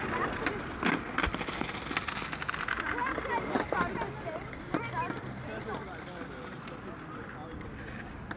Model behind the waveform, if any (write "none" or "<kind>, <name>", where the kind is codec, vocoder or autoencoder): none